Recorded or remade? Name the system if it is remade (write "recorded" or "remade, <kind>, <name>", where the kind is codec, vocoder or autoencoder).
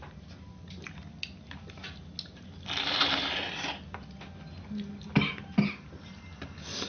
recorded